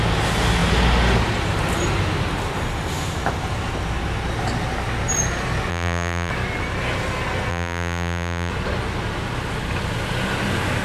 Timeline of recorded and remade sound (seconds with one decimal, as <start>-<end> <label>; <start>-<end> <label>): 0.0-5.7 recorded; 5.7-6.3 remade; 6.3-7.5 recorded; 7.5-8.5 remade; 8.5-10.8 recorded